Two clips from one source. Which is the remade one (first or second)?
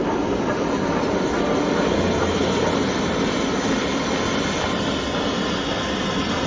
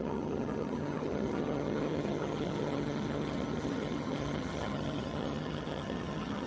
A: second